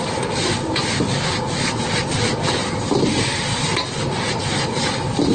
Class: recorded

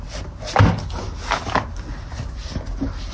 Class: recorded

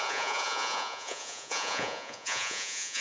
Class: remade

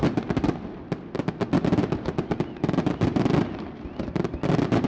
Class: recorded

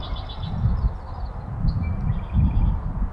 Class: recorded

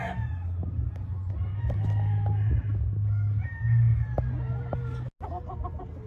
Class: recorded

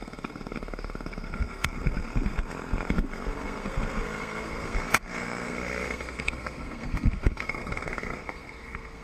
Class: remade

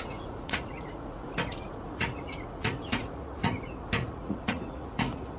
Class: remade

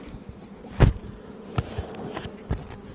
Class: recorded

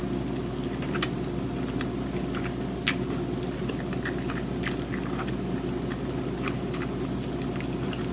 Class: recorded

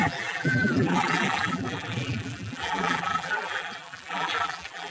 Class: remade